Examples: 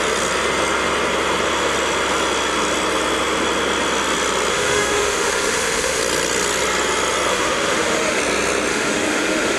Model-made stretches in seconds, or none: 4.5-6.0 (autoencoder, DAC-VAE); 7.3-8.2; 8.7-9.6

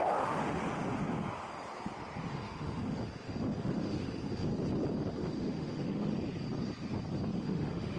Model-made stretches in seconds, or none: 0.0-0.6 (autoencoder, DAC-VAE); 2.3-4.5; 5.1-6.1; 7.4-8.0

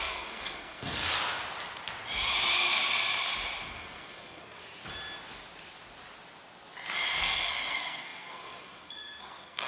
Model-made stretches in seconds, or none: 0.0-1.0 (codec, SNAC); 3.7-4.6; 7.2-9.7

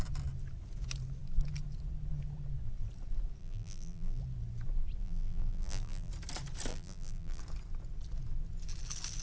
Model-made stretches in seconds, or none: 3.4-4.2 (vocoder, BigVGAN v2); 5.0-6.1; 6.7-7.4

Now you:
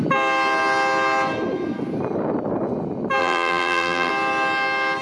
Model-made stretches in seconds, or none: 3.2-4.1 (vocoder, BigVGAN v2)

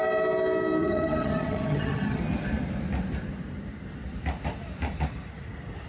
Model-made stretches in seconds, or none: 0.8-2.2 (vocoder, HiFi-GAN)

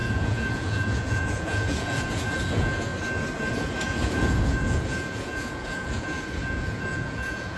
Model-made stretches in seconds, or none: 0.0-2.9 (vocoder, Vocos); 3.5-7.6

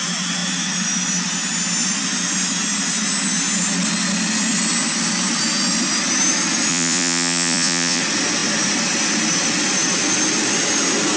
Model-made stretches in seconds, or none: 6.7-8.0 (vocoder, Vocos)